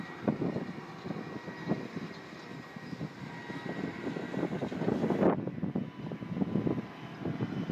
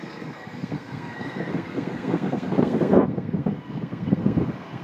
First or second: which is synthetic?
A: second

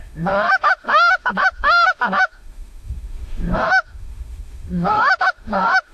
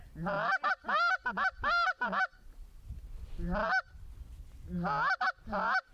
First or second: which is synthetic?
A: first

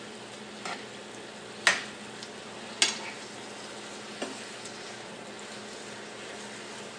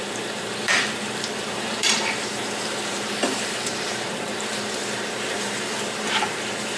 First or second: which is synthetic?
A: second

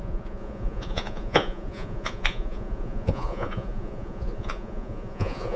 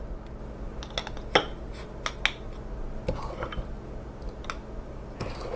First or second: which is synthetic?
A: first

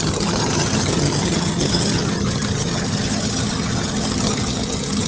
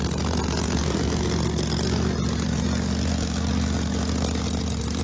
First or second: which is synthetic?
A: first